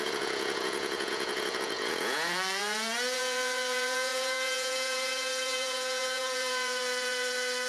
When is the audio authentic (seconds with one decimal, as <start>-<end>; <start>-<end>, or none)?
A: none